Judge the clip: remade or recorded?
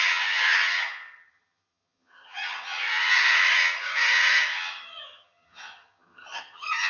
remade